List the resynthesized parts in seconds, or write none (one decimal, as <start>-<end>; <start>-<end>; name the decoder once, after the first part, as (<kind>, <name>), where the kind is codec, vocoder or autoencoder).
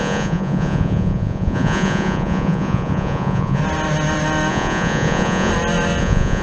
0.0-3.6 (vocoder, Vocos); 4.5-5.5; 6.0-6.4